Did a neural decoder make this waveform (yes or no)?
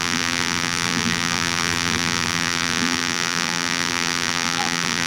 yes